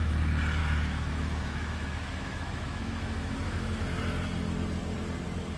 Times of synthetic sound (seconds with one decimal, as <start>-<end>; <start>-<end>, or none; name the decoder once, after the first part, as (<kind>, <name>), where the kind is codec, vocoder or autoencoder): 0.6-4.0 (autoencoder, DAC-VAE)